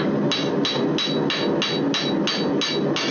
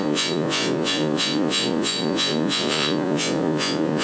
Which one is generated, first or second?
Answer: second